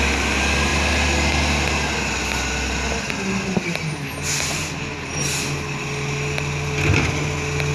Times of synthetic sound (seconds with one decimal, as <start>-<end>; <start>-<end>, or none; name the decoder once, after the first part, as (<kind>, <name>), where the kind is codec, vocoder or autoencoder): none